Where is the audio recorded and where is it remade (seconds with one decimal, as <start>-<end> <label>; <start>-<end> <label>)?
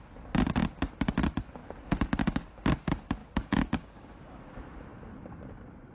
0.0-3.2 recorded; 3.2-4.4 remade; 4.4-5.9 recorded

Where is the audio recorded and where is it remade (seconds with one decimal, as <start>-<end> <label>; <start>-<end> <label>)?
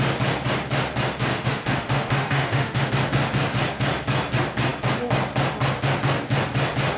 0.0-1.3 recorded; 1.3-2.9 remade; 2.9-7.0 recorded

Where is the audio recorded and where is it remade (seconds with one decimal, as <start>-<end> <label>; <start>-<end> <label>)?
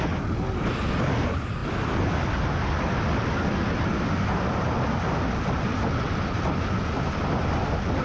0.0-8.0 recorded